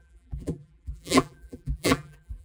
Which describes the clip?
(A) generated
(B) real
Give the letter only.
A